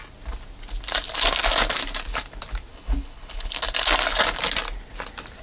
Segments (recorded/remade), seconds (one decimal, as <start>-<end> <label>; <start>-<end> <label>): 0.0-2.7 recorded; 2.7-3.6 remade; 3.6-5.4 recorded